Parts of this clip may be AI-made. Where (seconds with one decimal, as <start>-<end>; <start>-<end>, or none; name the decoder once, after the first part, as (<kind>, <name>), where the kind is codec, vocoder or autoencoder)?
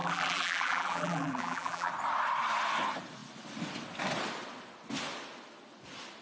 0.0-1.9 (vocoder, BigVGAN v2)